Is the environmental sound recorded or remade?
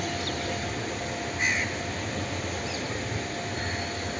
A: recorded